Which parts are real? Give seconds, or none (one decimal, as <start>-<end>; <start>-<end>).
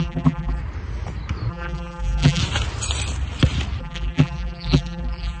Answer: 0.6-1.5; 2.4-3.8